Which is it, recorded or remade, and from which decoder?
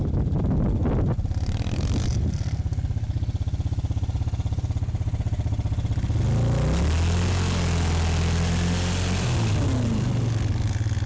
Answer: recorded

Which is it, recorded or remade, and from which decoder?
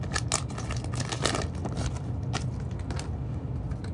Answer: recorded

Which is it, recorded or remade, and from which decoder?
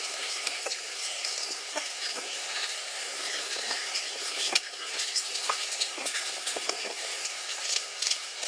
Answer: remade, codec, SNAC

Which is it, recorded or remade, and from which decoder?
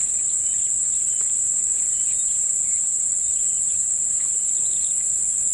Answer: recorded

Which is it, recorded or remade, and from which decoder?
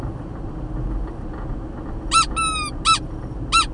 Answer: recorded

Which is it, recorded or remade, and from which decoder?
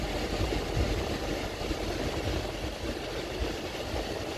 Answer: recorded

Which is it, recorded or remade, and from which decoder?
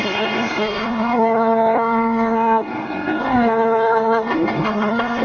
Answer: remade, codec, SNAC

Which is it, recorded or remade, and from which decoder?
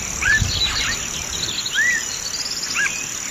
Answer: recorded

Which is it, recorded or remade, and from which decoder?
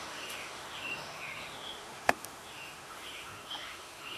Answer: remade, autoencoder, DAC-VAE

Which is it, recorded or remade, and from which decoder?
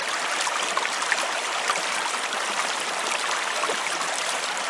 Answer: recorded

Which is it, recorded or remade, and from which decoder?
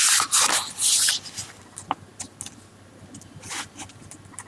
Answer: recorded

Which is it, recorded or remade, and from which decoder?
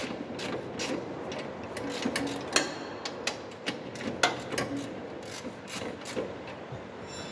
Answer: recorded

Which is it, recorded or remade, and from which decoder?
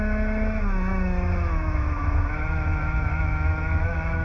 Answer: remade, autoencoder, DAC-VAE